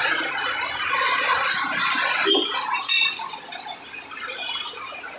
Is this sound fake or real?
fake